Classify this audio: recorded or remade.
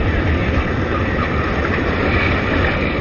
recorded